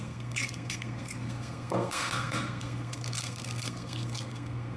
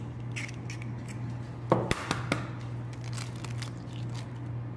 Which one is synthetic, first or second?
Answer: first